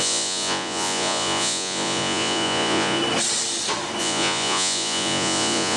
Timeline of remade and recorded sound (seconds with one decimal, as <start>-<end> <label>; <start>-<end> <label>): 0.0-3.0 remade; 3.0-4.0 recorded; 4.0-5.8 remade